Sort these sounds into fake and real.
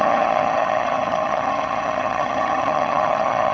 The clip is fake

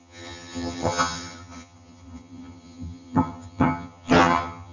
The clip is fake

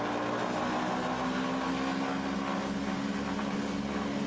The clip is real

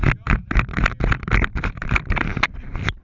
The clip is real